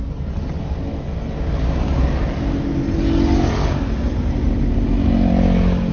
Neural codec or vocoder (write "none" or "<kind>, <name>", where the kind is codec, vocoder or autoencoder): none